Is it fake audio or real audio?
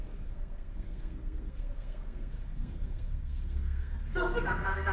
fake